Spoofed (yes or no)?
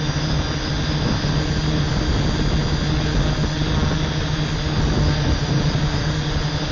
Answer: no